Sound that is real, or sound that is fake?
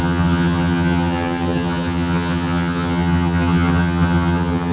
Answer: fake